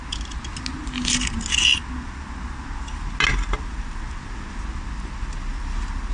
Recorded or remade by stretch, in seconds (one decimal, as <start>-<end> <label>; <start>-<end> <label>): 0.0-6.1 recorded